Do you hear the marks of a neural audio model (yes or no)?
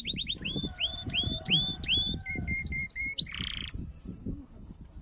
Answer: no